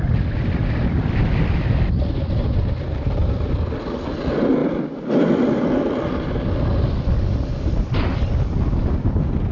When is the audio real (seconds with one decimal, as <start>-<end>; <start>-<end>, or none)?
0.0-9.5